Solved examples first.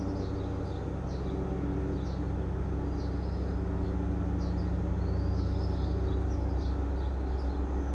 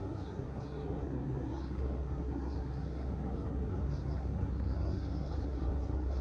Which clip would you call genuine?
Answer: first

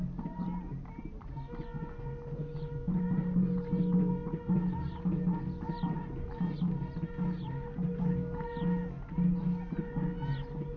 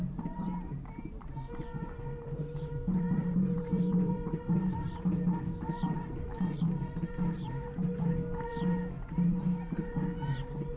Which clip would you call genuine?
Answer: first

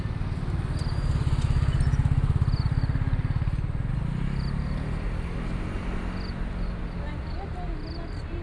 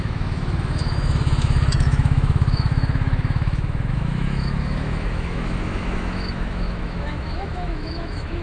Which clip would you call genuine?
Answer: first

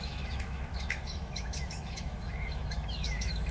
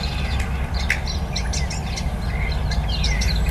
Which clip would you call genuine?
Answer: second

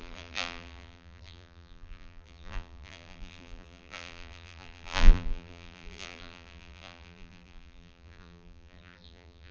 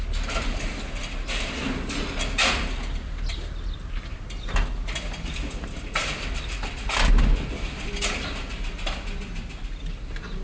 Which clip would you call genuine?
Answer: second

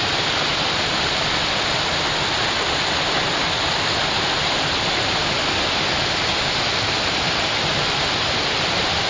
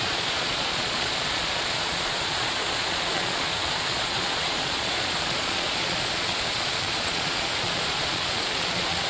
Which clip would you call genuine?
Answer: first